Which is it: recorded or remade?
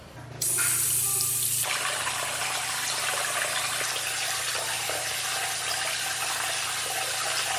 recorded